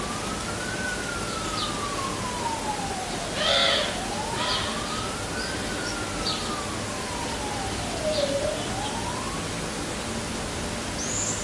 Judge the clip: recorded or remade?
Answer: recorded